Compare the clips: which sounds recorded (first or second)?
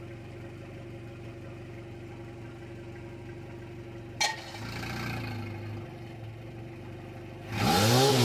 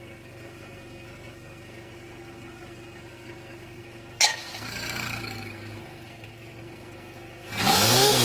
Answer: first